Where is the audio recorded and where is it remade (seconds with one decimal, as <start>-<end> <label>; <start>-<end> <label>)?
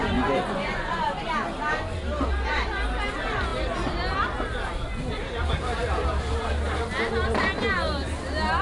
0.0-1.3 remade; 1.3-8.6 recorded